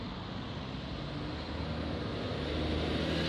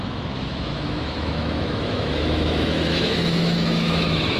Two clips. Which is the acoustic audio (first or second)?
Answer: first